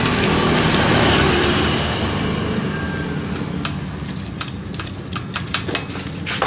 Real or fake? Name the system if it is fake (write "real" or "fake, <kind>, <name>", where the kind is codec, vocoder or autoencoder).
real